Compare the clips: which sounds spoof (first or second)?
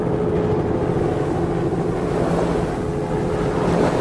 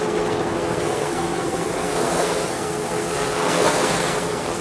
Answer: second